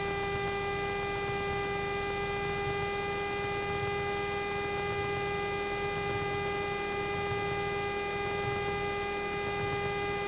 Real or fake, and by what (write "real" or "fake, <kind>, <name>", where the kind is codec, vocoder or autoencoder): real